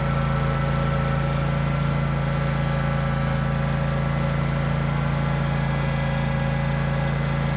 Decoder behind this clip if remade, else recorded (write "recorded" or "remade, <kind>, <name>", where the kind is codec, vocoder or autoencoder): recorded